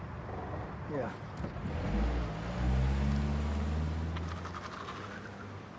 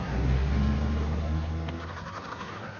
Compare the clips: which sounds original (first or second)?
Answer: first